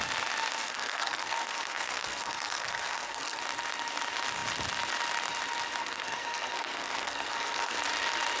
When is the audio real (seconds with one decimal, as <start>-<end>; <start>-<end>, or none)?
0.0-0.5; 3.4-5.8; 7.8-8.4